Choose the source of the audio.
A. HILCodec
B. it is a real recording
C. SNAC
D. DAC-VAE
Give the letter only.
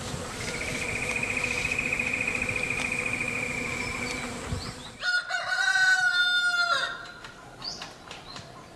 B